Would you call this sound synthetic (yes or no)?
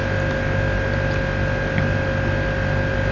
no